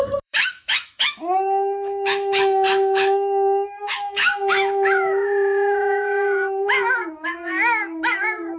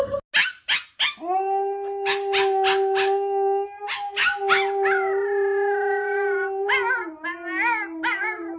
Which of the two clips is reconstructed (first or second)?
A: first